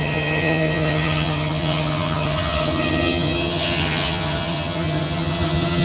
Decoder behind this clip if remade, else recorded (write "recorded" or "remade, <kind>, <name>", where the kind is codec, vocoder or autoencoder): remade, vocoder, HiFi-GAN